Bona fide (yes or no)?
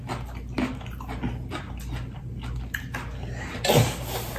yes